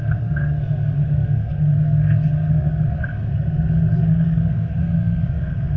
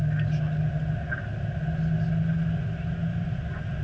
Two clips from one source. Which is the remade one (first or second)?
first